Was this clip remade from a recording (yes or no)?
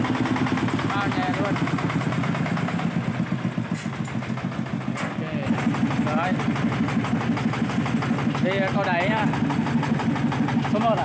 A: no